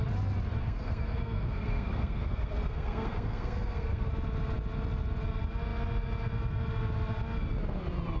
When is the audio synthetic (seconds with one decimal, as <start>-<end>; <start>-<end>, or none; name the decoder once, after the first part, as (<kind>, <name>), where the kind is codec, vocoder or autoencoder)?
0.6-4.1 (codec, SNAC)